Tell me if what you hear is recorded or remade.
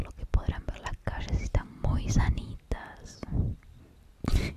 recorded